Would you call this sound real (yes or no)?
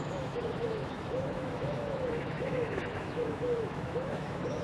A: no